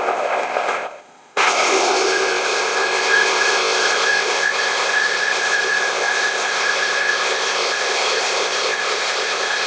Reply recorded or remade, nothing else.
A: remade